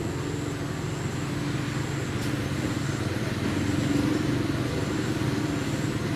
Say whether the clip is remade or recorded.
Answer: recorded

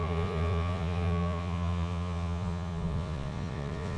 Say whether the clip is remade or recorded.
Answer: remade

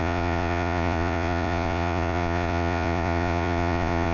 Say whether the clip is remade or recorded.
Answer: remade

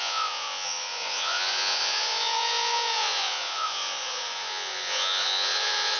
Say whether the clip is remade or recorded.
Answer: remade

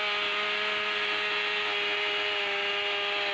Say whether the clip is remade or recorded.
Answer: recorded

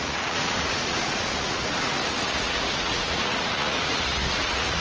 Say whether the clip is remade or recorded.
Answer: remade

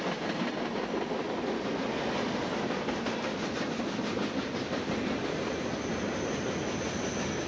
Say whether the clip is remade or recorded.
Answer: recorded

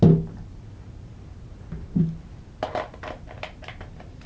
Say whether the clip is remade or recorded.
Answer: recorded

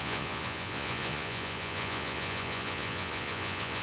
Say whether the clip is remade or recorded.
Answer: remade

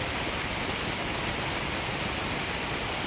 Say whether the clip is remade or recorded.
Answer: recorded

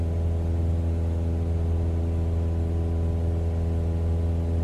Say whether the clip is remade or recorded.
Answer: recorded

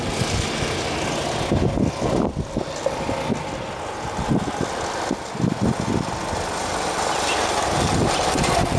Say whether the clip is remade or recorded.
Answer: recorded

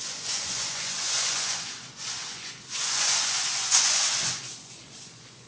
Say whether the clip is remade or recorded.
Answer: remade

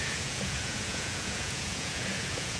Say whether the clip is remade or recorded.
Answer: remade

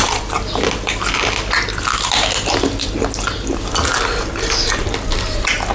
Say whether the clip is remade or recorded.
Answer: recorded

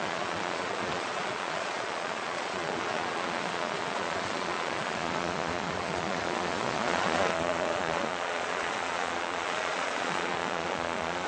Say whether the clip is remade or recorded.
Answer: remade